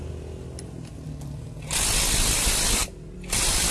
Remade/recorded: recorded